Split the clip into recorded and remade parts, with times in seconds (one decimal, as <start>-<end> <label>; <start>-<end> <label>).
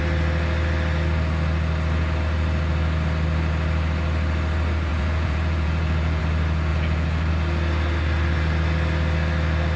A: 0.0-4.9 recorded; 4.9-6.2 remade; 6.2-6.7 recorded; 6.7-7.3 remade; 7.3-9.8 recorded